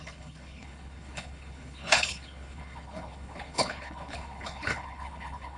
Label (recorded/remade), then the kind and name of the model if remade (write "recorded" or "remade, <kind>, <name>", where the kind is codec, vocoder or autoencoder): remade, codec, HILCodec